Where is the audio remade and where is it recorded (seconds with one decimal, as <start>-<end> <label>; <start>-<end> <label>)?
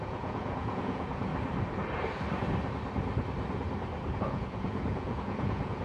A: 0.0-1.3 remade; 1.3-4.2 recorded; 4.2-5.8 remade